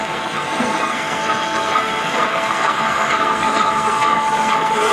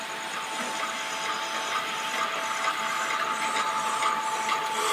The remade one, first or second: first